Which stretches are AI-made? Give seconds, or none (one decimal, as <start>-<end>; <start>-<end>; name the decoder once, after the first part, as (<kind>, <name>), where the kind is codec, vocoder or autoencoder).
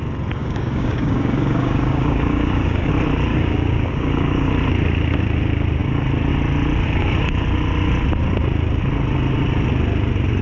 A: 0.4-2.9 (codec, DAC); 3.3-4.5